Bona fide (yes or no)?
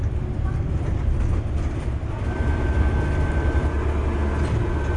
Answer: yes